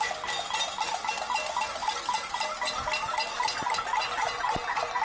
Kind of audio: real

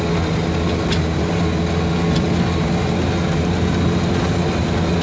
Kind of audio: real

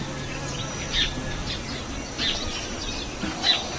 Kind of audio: real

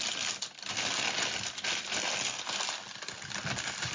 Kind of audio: real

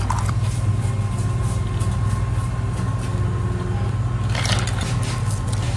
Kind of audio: real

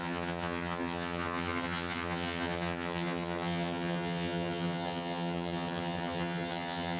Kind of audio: fake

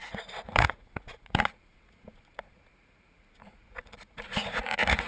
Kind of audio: fake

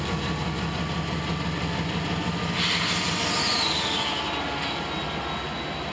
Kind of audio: real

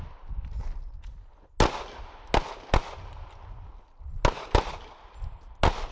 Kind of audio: real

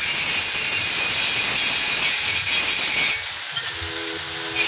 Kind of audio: real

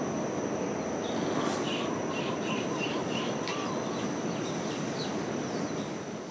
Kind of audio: real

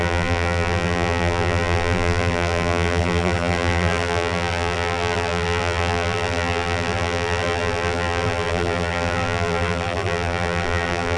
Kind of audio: fake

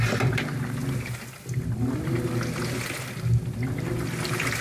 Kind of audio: real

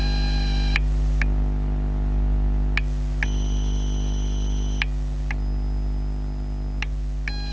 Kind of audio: real